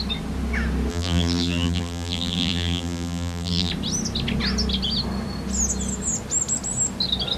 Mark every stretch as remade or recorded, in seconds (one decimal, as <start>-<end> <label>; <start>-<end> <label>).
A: 0.0-0.9 recorded; 0.9-3.7 remade; 3.7-7.4 recorded